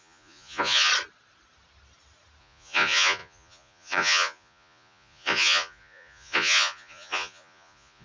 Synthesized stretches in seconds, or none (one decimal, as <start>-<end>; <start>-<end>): 0.0-0.9; 2.4-8.0